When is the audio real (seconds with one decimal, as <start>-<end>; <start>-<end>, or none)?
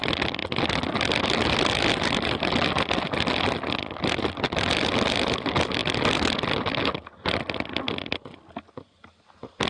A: 0.0-9.7